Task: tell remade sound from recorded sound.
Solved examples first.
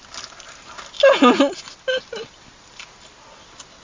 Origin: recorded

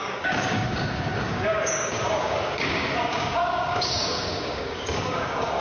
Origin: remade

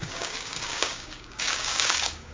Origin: remade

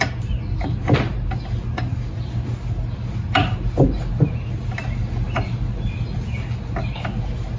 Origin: recorded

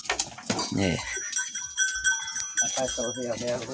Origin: recorded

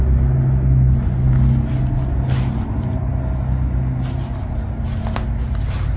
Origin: recorded